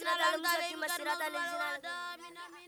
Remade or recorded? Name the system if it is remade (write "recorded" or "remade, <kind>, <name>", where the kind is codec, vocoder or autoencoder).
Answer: recorded